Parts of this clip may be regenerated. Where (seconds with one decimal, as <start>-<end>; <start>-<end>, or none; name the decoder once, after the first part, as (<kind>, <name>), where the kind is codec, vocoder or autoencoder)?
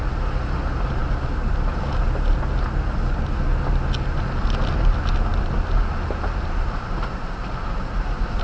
none